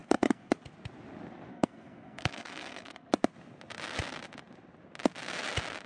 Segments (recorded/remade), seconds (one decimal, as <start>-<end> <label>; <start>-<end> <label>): 0.0-0.5 remade; 0.5-1.5 recorded; 1.5-3.1 remade; 3.1-5.9 recorded